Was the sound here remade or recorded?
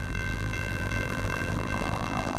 remade